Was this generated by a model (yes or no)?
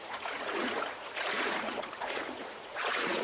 yes